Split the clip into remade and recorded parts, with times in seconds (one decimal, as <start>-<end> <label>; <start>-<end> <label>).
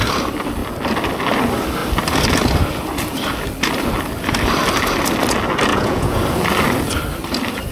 0.0-5.7 recorded; 5.7-6.2 remade; 6.2-7.7 recorded